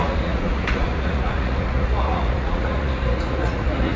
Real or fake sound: fake